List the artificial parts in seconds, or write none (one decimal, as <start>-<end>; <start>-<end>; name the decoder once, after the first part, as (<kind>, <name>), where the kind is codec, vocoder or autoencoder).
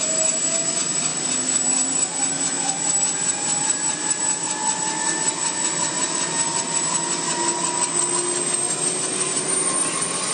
none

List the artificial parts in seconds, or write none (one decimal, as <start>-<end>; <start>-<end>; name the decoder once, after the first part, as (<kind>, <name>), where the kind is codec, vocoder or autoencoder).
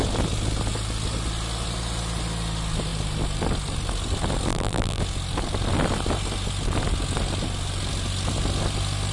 4.5-5.0 (vocoder, BigVGAN v2)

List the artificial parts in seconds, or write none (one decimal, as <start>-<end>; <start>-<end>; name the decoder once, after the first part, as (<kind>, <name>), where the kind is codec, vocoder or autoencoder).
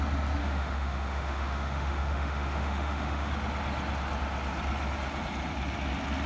0.4-3.3 (autoencoder, DAC-VAE)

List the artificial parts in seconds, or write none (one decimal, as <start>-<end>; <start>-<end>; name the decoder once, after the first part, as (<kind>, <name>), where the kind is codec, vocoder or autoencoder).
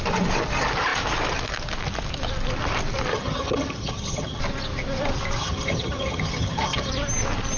3.1-4.4 (vocoder, HiFi-GAN); 5.4-6.9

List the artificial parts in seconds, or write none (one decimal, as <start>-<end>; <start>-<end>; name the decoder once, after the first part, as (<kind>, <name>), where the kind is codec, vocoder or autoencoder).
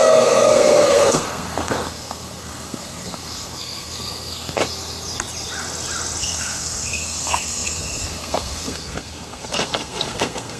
0.0-4.6 (codec, SNAC); 6.2-10.6